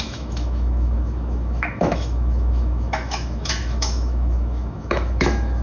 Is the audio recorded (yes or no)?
no